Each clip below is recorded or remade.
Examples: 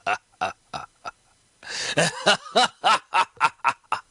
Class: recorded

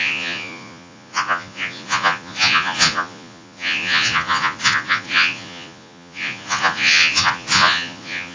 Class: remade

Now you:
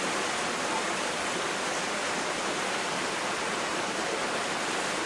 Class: recorded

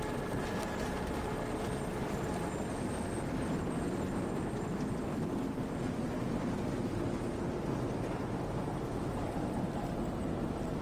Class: recorded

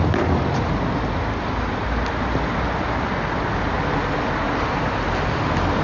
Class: recorded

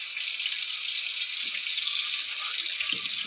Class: recorded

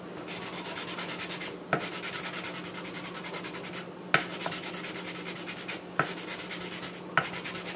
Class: recorded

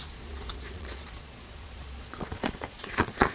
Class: remade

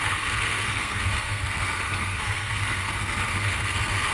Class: remade